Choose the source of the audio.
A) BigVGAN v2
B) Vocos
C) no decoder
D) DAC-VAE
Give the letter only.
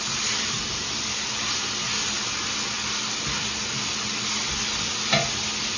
C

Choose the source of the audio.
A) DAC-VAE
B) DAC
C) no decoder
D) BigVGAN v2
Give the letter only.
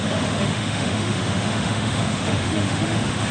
A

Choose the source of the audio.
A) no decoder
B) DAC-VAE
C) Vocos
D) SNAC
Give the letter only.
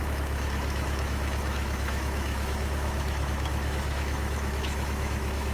B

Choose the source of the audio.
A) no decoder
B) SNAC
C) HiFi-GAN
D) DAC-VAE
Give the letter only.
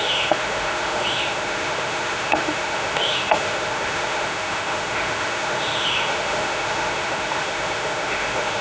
D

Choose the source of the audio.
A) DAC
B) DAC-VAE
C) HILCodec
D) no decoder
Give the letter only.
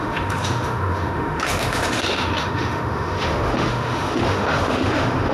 B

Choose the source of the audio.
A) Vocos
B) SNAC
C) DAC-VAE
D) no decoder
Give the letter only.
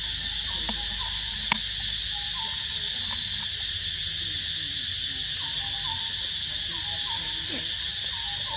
D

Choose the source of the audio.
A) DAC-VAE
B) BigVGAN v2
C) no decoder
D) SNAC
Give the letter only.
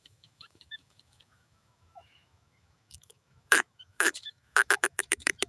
A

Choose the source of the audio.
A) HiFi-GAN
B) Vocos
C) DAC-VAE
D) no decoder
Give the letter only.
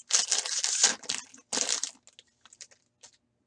D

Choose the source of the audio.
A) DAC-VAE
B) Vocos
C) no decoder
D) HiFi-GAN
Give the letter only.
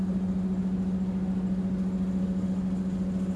C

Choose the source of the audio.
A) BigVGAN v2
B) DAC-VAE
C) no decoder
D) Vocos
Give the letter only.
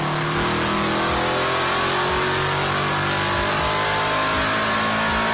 C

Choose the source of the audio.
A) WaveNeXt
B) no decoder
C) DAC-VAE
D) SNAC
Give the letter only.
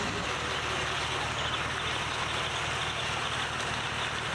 B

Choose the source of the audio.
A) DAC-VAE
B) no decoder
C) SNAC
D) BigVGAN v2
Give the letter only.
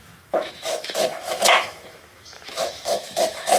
A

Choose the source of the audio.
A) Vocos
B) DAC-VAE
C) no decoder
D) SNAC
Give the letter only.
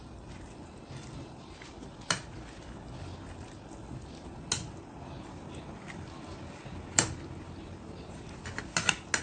C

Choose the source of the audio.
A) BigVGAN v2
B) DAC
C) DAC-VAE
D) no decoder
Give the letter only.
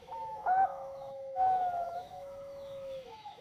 C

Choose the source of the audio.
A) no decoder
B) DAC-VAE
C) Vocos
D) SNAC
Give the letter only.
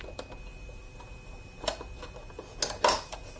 A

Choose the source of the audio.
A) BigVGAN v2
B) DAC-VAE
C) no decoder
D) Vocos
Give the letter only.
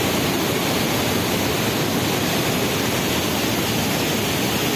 C